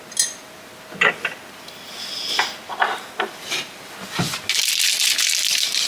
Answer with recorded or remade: recorded